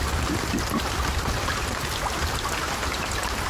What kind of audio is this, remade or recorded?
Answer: recorded